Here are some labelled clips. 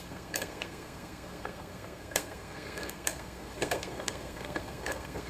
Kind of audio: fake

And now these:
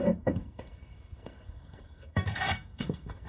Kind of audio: fake